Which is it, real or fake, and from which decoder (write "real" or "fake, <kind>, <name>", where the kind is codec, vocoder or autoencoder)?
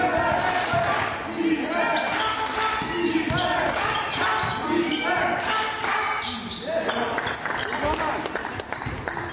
real